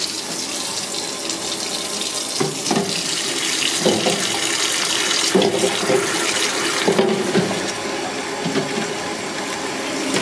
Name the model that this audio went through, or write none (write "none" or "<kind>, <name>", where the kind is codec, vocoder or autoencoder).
none